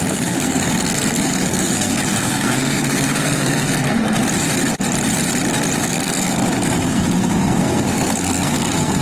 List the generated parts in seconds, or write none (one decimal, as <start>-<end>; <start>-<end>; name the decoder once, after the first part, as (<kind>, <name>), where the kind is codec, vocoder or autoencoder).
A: 0.0-4.2 (codec, SNAC); 5.8-9.0